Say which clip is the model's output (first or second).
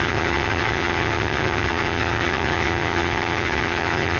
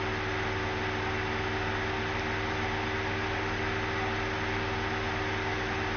first